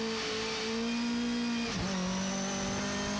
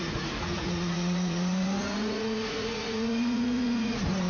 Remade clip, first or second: second